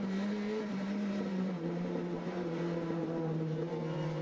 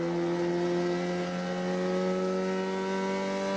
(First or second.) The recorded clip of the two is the second